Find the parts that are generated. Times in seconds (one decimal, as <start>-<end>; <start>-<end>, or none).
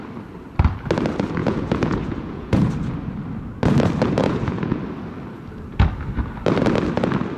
1.4-2.7; 4.2-4.8